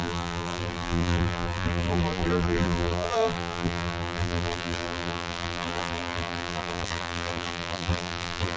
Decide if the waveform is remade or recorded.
remade